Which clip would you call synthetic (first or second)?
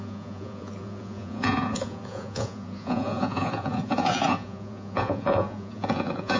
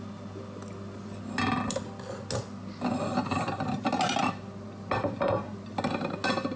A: first